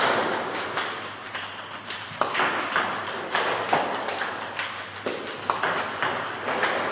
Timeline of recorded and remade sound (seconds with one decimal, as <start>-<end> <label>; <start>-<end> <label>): 0.0-6.9 recorded